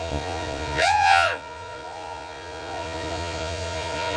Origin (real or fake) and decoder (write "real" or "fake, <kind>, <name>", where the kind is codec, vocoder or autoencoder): fake, vocoder, Vocos